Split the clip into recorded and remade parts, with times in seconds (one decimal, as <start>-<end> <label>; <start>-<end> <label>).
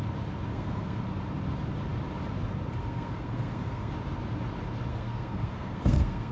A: 0.0-0.5 recorded; 0.5-1.0 remade; 1.0-2.8 recorded; 2.8-3.9 remade; 3.9-4.9 recorded; 4.9-6.3 remade